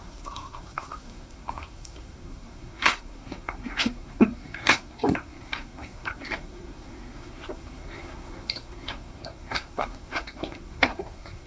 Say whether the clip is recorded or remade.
remade